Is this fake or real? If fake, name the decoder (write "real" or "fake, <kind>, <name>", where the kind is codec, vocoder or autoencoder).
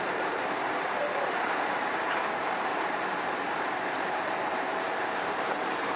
fake, vocoder, BigVGAN v2